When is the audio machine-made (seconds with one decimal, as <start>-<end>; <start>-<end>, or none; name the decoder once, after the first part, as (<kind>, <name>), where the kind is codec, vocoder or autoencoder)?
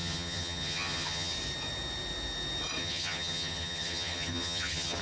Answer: 0.0-1.3 (vocoder, HiFi-GAN); 2.8-5.0